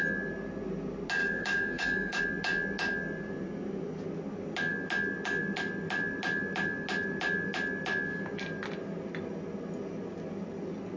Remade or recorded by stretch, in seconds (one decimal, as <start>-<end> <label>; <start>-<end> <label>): 0.0-1.2 recorded; 1.2-2.2 remade; 2.2-11.0 recorded